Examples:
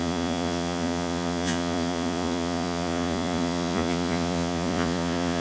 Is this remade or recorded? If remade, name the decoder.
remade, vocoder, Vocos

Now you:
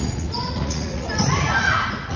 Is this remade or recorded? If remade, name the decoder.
remade, vocoder, Vocos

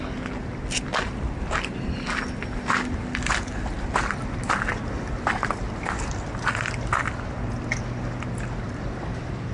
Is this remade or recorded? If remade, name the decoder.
recorded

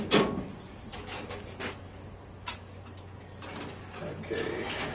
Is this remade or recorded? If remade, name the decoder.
recorded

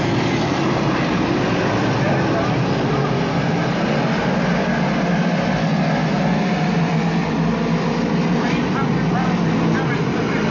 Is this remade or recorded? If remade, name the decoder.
recorded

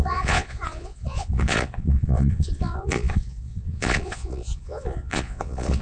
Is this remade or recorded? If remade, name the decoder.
remade, vocoder, Vocos